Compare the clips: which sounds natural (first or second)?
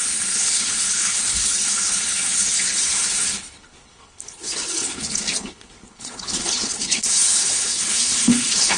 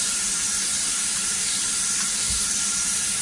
second